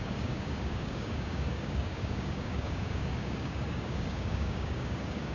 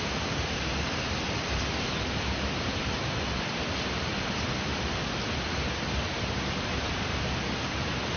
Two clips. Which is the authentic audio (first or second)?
second